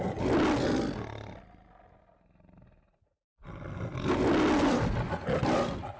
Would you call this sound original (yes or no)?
yes